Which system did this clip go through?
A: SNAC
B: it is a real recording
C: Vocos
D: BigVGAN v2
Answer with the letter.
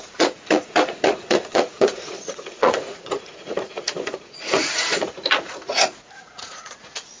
C